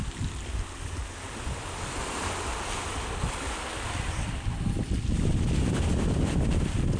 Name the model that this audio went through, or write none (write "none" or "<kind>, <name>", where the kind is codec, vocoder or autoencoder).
none